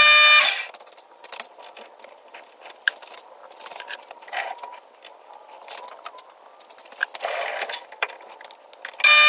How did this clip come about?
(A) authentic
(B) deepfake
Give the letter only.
A